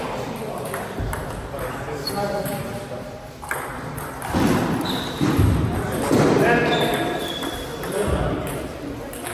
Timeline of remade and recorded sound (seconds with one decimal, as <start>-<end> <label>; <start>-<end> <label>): 0.0-9.3 remade